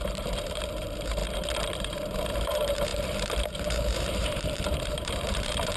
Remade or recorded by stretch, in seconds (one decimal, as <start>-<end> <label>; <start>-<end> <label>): 0.0-1.2 remade; 1.2-1.8 recorded; 1.8-5.8 remade